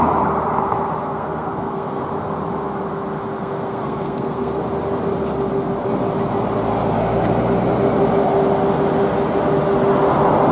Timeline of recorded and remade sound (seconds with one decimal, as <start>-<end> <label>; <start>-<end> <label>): 0.0-1.0 recorded; 1.0-2.0 remade; 2.0-3.4 recorded; 3.4-4.6 remade; 4.6-10.5 recorded